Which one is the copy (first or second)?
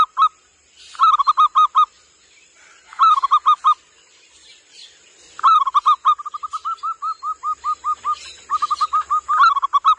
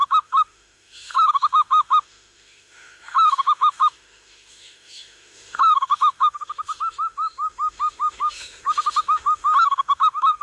second